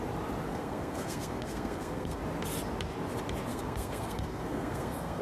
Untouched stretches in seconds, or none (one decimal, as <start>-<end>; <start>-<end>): 0.0-0.5; 2.2-3.5